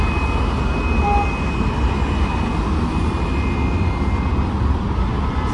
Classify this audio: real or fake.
real